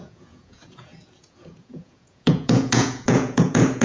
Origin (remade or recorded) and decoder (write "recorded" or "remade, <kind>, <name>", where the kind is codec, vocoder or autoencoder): remade, vocoder, Vocos